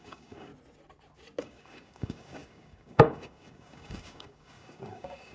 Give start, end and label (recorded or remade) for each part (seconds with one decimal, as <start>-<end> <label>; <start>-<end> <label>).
0.0-0.5 remade; 0.5-1.4 recorded; 1.4-5.3 remade